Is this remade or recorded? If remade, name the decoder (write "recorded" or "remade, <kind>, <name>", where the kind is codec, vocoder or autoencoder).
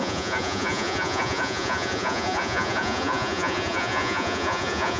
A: remade, vocoder, Vocos